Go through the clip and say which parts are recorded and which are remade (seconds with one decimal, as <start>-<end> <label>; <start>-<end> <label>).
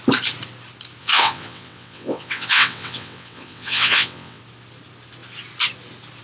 0.0-1.0 recorded; 1.0-4.4 remade; 4.4-6.2 recorded